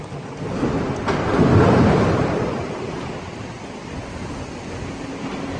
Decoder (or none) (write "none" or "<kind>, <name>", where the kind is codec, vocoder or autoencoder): none